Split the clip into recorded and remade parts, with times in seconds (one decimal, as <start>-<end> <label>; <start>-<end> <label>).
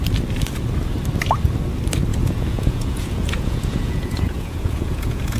0.0-2.1 recorded; 2.1-5.4 remade